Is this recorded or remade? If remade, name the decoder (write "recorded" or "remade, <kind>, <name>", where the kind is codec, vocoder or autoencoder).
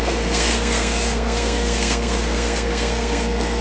remade, codec, SNAC